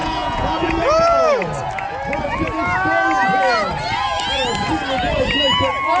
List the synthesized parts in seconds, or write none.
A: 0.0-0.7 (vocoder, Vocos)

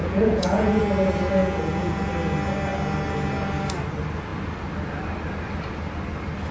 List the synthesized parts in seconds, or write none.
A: 0.0-0.8 (vocoder, Vocos); 1.4-2.1

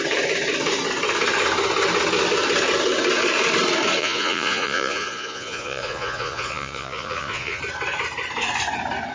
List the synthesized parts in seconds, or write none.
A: 4.0-7.6 (vocoder, Vocos)

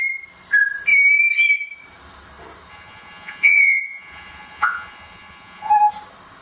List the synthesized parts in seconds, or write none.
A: 2.7-5.7 (vocoder, Vocos)

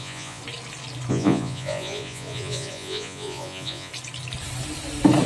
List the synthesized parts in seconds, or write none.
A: 0.0-0.4 (vocoder, Vocos); 1.1-3.9